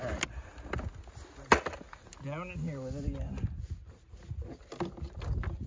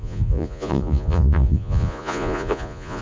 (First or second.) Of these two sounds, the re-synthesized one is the second